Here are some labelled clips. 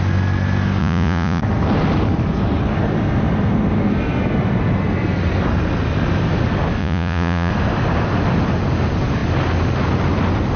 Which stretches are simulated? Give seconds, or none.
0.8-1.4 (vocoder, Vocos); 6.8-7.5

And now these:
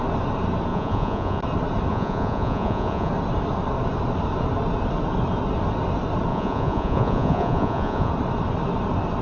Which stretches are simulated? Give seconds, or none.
0.7-1.4 (vocoder, Vocos); 1.9-3.1; 6.3-8.1

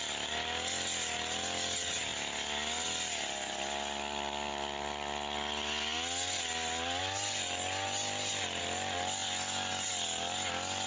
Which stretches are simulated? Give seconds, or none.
none

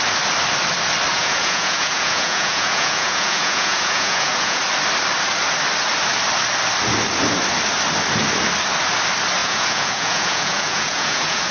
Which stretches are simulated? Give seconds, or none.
1.1-4.6 (vocoder, Vocos); 9.4-11.5

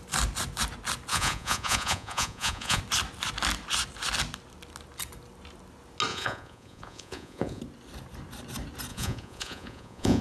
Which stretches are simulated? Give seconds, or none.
1.1-2.8 (vocoder, Vocos); 6.1-7.6; 8.9-10.2

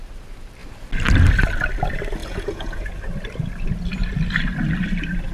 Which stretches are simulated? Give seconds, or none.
2.2-2.9 (vocoder, Vocos)